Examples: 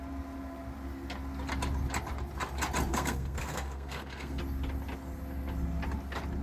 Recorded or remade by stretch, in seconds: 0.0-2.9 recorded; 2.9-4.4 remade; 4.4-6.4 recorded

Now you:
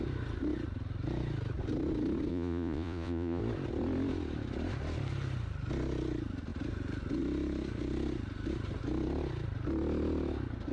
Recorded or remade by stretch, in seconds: 0.0-2.3 recorded; 2.3-3.4 remade; 3.4-10.7 recorded